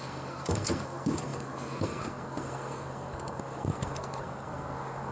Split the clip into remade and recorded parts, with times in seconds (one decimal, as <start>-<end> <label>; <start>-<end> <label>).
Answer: 0.0-5.1 remade